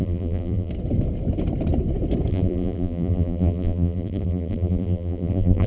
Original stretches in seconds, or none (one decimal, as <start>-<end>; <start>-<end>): 0.7-2.3